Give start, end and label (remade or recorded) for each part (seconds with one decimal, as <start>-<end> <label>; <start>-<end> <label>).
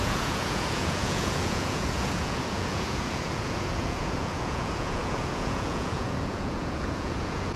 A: 0.0-7.6 remade